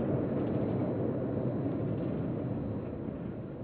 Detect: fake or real real